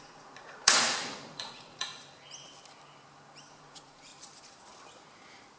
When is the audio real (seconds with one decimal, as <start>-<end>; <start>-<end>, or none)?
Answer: 1.9-3.5; 4.1-5.6